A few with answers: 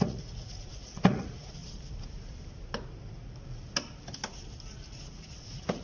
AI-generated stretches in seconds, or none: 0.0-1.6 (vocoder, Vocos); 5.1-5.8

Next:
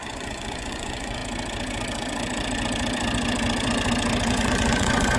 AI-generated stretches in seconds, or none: 0.0-1.2 (vocoder, Vocos); 4.3-5.2

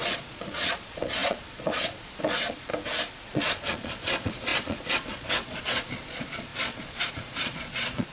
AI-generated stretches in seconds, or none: 0.0-2.7 (vocoder, Vocos); 3.2-8.1

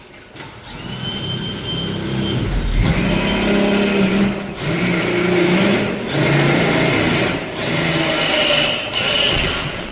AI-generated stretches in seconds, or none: 9.0-9.9 (vocoder, Vocos)